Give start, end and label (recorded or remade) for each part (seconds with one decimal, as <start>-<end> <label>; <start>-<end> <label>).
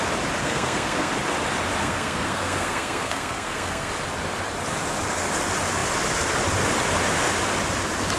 0.0-0.4 recorded; 0.4-1.1 remade; 1.1-1.8 recorded; 1.8-3.9 remade; 3.9-8.2 recorded